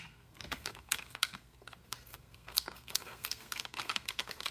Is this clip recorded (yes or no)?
no